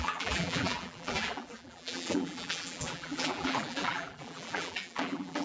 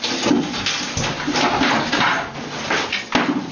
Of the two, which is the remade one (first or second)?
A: first